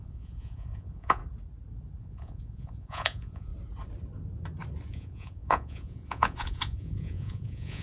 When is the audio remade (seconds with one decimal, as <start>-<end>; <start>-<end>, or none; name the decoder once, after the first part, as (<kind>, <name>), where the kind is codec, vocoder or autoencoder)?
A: 0.0-1.2 (vocoder, Vocos); 2.0-3.5; 4.9-7.8

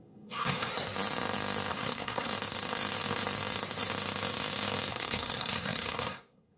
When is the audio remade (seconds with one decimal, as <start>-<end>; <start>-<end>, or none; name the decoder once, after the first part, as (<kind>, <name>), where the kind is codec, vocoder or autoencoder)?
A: 0.0-0.7 (codec, SNAC); 1.7-2.3; 4.9-6.6

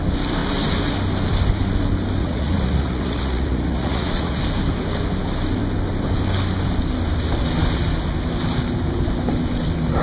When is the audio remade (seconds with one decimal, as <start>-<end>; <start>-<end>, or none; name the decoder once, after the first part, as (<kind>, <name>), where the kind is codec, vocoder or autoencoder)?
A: 2.2-4.4 (vocoder, Vocos)

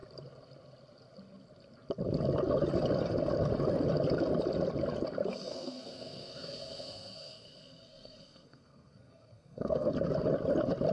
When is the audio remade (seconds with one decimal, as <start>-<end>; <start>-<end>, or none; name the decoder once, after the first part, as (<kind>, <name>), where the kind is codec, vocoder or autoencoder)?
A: 5.5-9.9 (codec, SNAC)

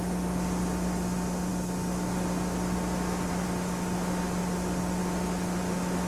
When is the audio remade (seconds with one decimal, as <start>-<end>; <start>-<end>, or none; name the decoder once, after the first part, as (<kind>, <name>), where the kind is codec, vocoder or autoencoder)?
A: none